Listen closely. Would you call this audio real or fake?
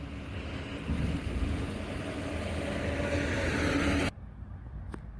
real